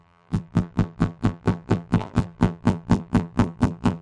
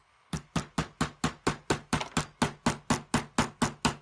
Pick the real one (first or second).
second